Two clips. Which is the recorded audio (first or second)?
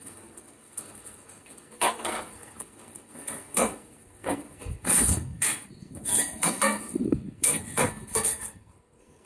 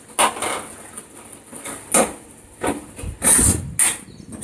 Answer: second